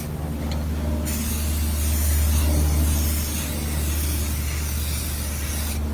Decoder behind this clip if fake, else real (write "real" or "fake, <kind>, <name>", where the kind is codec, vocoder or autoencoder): real